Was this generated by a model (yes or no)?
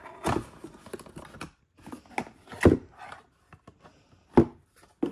no